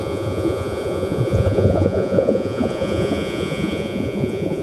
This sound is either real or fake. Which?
fake